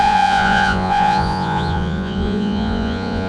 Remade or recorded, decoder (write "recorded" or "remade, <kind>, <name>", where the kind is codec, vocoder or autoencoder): remade, vocoder, Vocos